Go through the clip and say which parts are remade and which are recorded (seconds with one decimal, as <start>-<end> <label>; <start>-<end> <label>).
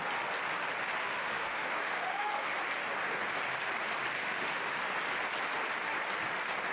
0.0-1.0 recorded; 1.0-2.5 remade; 2.5-4.2 recorded; 4.2-4.7 remade; 4.7-6.7 recorded